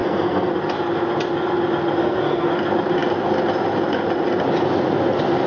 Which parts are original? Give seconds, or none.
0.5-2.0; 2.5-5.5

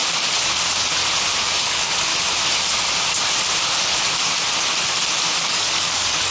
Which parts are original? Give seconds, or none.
0.0-1.6; 2.1-5.5